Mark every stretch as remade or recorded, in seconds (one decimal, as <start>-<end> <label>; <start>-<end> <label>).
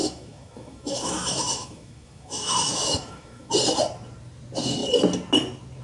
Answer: 0.0-3.5 remade; 3.5-5.8 recorded